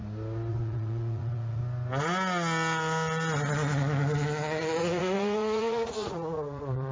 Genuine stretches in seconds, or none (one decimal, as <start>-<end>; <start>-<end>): 0.0-0.5; 1.6-4.8